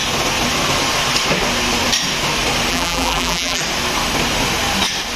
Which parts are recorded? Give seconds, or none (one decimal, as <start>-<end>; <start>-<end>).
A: 0.0-2.7; 3.6-5.2